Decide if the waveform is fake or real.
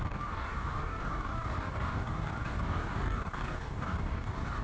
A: fake